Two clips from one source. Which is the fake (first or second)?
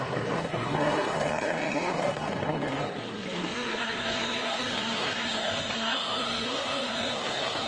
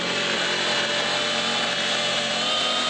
first